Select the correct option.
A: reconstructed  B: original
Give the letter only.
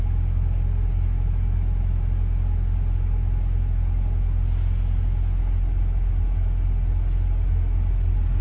B